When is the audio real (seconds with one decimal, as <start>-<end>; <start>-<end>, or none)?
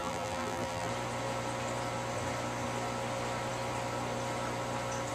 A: 0.9-5.1